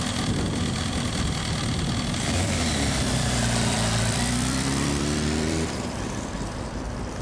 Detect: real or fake fake